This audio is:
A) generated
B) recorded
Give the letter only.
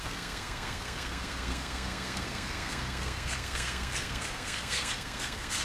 A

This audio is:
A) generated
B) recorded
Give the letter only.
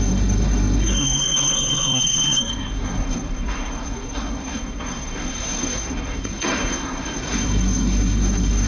A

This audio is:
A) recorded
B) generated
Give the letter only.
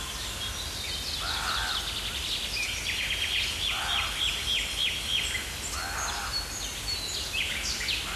A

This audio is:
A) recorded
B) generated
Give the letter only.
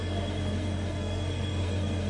B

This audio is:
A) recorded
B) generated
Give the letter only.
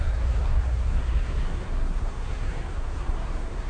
B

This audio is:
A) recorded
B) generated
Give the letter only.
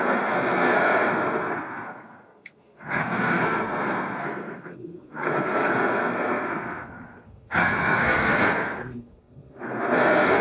B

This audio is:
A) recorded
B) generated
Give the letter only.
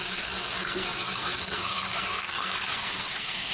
B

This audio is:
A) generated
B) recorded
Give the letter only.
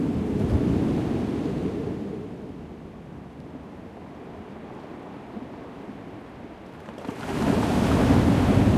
B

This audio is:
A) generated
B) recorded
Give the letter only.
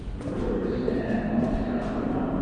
B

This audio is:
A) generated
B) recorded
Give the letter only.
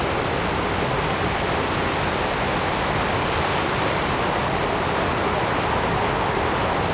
B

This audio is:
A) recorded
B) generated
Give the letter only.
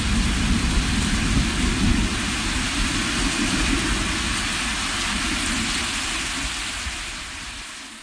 A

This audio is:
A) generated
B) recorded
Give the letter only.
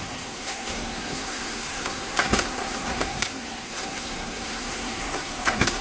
A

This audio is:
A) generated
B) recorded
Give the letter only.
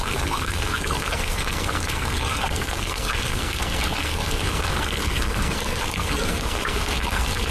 A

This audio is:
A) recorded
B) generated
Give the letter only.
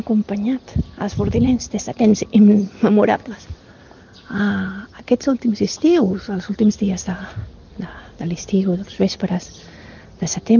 A